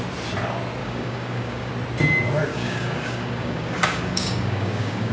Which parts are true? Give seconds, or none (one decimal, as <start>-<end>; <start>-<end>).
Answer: 0.0-0.8; 1.7-2.5